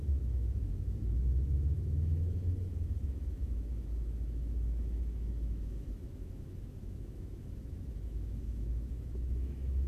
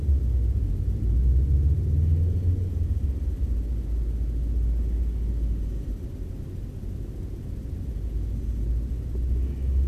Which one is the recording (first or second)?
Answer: second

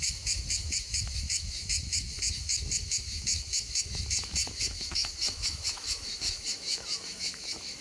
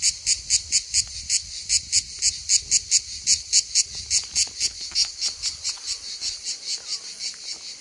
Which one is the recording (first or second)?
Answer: second